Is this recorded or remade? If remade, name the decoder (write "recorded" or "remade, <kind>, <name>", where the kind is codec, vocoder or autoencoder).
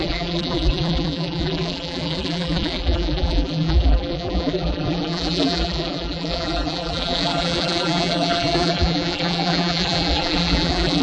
remade, vocoder, BigVGAN v2